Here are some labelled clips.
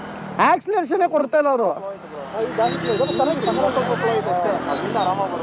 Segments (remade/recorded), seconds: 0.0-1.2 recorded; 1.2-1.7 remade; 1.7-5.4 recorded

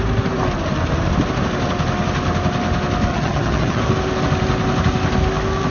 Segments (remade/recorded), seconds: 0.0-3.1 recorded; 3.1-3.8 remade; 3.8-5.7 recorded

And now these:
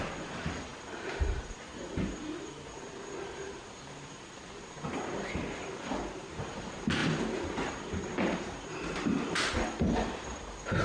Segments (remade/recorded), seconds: 0.0-10.8 recorded